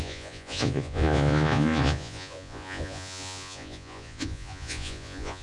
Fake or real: fake